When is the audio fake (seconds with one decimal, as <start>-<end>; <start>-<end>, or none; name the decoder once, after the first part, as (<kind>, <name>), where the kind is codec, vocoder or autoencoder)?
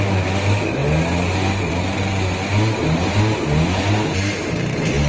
none